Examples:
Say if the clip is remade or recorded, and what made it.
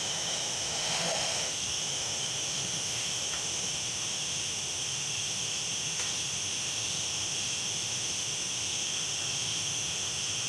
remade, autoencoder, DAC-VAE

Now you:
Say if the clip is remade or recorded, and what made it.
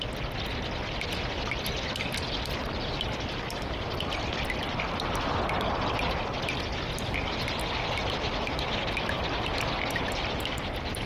recorded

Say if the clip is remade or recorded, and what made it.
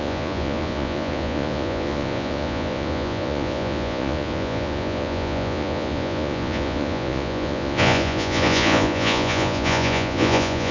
remade, vocoder, Vocos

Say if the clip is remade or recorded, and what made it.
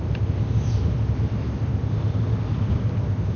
recorded